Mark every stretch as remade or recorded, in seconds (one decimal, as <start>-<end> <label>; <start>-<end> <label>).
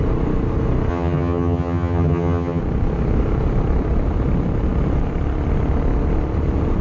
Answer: 0.0-0.9 recorded; 0.9-2.6 remade; 2.6-6.8 recorded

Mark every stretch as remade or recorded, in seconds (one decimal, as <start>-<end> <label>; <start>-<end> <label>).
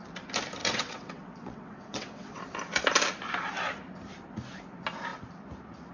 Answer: 0.0-0.6 recorded; 0.6-2.4 remade; 2.4-5.9 recorded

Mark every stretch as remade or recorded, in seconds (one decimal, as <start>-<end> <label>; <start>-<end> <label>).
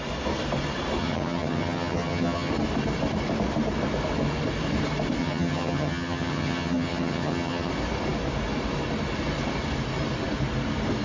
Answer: 0.0-1.0 recorded; 1.0-2.5 remade; 2.5-5.2 recorded; 5.2-7.7 remade; 7.7-11.0 recorded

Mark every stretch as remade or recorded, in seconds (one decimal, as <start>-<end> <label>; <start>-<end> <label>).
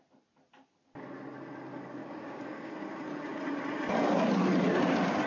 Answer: 0.0-2.0 recorded; 2.0-2.7 remade; 2.7-5.3 recorded